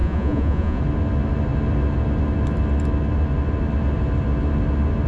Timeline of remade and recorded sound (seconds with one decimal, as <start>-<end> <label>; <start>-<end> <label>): 0.0-0.8 remade; 0.8-5.1 recorded